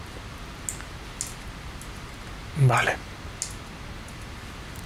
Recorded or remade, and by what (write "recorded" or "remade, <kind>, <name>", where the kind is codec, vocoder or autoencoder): recorded